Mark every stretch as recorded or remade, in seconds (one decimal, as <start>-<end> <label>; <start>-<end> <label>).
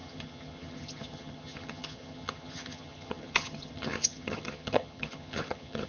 0.0-5.9 remade